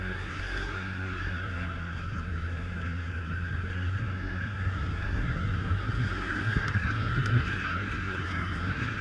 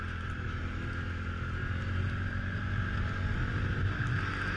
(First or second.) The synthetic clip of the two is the first